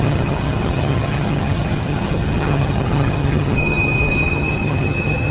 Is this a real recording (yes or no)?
no